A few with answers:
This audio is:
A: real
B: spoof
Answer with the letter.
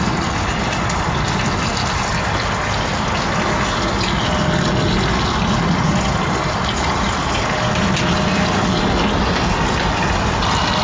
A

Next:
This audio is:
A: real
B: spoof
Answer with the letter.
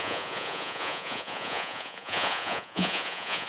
B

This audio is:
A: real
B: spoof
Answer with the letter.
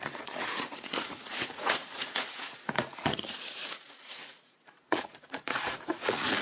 B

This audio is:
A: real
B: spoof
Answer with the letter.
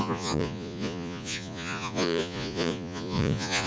B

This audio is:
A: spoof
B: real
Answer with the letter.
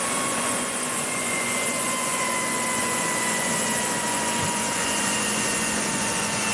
A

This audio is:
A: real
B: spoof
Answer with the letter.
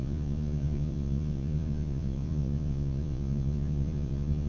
B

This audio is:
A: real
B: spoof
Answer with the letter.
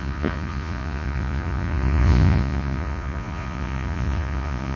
B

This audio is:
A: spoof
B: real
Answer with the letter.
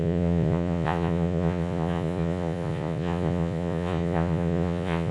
A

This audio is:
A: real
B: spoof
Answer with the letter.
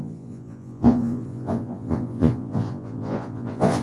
B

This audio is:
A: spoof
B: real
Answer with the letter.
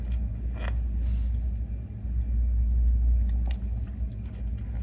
B